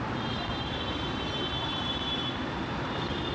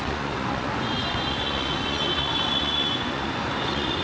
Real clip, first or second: first